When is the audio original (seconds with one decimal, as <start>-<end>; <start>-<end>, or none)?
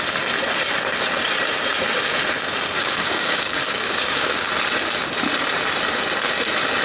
0.0-2.8; 4.5-6.8